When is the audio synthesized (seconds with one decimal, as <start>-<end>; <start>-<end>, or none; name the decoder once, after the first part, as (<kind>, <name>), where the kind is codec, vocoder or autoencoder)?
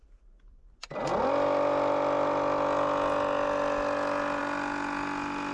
none